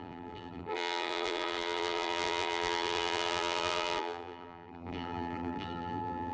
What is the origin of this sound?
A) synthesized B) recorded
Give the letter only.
A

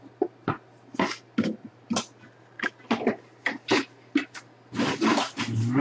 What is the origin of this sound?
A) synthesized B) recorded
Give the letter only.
B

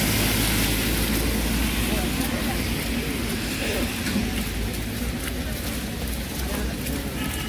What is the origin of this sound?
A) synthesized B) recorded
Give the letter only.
B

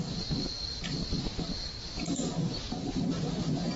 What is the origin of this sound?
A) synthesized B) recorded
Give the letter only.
B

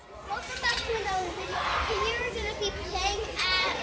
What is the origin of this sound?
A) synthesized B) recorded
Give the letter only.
A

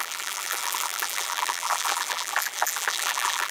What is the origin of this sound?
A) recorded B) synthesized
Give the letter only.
B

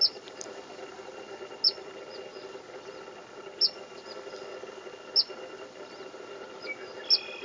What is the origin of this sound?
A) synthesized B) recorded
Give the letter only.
B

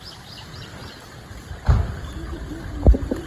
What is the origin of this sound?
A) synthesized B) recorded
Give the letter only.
B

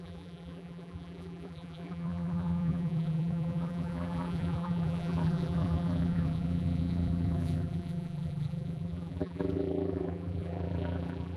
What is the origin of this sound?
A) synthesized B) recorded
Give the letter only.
A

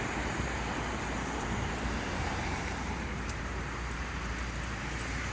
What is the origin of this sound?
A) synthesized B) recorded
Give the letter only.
A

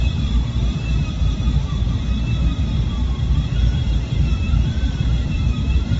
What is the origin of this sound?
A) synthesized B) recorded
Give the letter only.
A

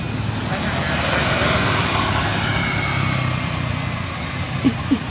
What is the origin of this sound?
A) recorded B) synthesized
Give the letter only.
A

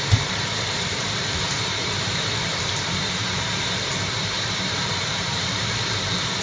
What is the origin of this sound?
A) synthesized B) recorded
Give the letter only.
A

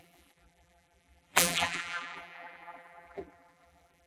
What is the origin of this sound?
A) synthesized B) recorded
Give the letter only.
A